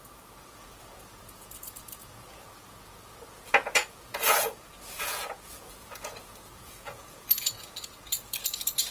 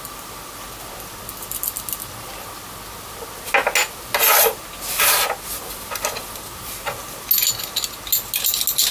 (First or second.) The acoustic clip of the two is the second